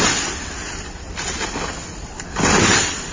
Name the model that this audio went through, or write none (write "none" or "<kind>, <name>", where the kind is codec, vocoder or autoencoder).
none